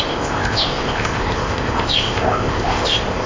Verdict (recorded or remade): remade